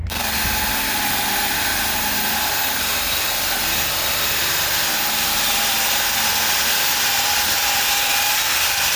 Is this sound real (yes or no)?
yes